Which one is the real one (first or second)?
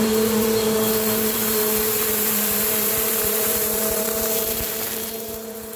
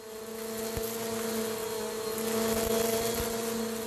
second